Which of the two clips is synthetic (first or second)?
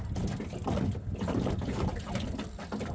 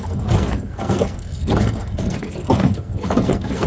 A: second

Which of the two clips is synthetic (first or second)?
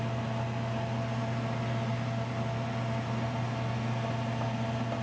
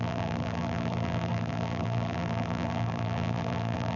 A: second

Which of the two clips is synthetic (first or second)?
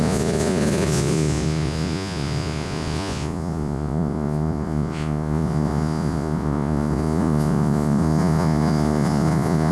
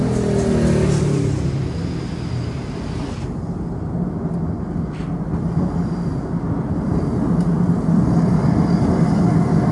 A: first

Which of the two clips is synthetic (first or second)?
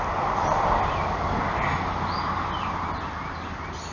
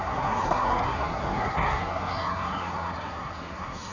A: second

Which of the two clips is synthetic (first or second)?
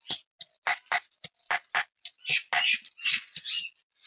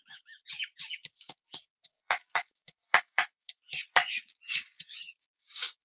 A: second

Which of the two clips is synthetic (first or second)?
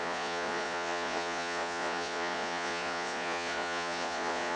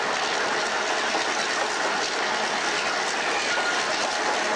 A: first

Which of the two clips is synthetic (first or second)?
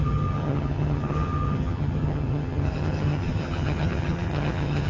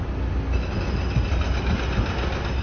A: first